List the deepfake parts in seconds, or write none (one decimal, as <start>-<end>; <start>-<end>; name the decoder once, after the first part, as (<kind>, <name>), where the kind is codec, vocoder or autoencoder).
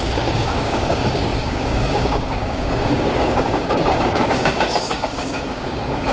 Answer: 0.0-6.1 (codec, DAC)